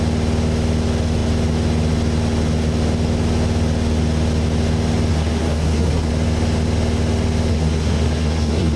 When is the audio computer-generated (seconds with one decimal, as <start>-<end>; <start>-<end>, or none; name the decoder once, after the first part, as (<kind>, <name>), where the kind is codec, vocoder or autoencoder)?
5.1-6.1 (codec, SNAC); 7.5-8.8